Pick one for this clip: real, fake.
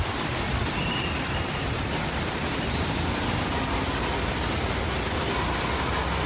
real